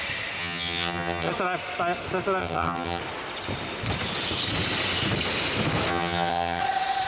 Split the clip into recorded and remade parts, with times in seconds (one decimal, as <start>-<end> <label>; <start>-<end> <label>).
0.0-0.4 recorded; 0.4-1.3 remade; 1.3-2.4 recorded; 2.4-3.0 remade; 3.0-5.9 recorded; 5.9-6.6 remade; 6.6-7.1 recorded